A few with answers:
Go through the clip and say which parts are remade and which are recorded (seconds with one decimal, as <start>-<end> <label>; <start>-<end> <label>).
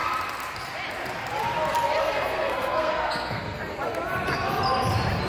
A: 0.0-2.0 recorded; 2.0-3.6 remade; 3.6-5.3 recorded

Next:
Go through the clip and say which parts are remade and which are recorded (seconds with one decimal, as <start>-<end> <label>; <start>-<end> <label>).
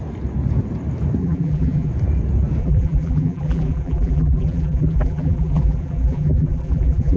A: 0.0-1.2 recorded; 1.2-1.9 remade; 1.9-2.6 recorded; 2.6-7.2 remade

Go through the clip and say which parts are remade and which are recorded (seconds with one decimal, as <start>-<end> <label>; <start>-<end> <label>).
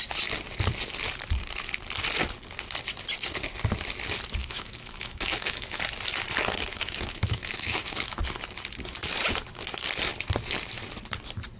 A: 0.0-4.4 recorded; 4.4-5.8 remade; 5.8-6.7 recorded; 6.7-8.2 remade; 8.2-11.6 recorded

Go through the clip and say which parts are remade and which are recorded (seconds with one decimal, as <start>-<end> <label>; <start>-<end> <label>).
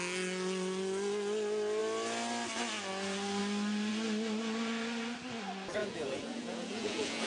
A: 0.0-5.8 recorded; 5.8-7.3 remade